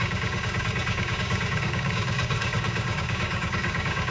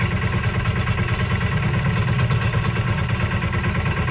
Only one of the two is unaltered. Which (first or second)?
second